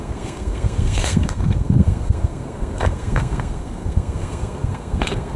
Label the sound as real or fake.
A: fake